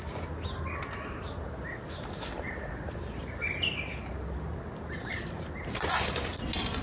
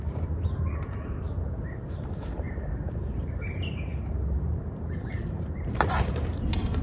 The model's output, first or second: second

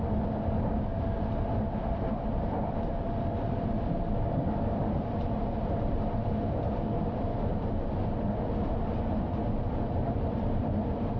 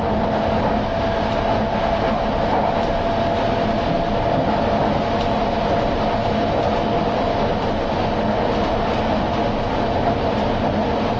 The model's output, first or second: first